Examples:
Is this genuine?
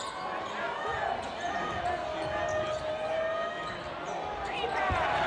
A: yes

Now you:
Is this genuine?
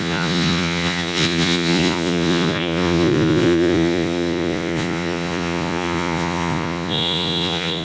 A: no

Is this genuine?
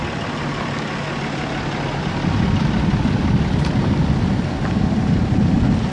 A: yes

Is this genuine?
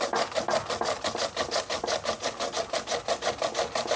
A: yes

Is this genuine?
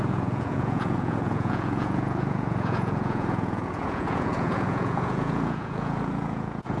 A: no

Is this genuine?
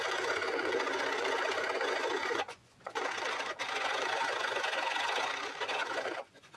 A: no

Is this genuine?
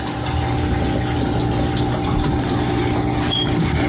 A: yes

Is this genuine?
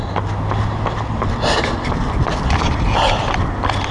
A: yes